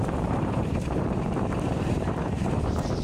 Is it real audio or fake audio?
fake